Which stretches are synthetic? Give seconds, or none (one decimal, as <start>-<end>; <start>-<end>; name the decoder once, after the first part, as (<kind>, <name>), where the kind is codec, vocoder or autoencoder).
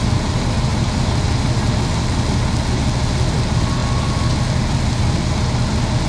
none